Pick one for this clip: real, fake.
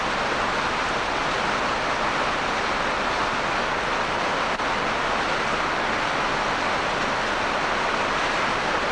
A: real